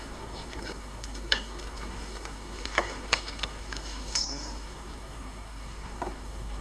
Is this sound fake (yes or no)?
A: yes